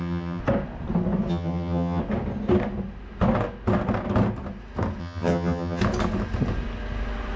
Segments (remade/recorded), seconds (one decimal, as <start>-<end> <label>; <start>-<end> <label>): 0.0-0.4 remade; 0.4-1.3 recorded; 1.3-2.0 remade; 2.0-5.0 recorded; 5.0-5.8 remade; 5.8-7.4 recorded